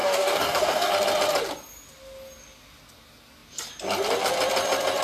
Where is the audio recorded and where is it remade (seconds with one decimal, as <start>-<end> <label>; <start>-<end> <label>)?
0.0-0.9 remade; 0.9-5.0 recorded